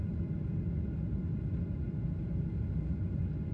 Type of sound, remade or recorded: recorded